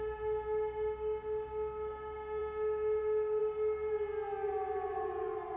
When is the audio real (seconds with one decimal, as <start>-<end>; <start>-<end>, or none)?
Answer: 0.0-5.6